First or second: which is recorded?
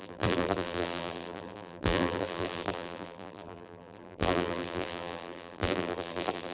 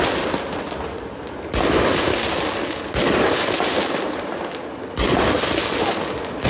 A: second